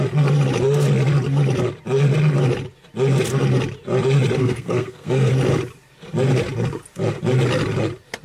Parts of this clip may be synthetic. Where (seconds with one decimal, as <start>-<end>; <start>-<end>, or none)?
4.4-5.3